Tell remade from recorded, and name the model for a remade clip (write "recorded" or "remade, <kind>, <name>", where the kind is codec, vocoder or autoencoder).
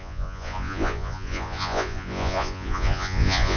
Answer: remade, vocoder, Vocos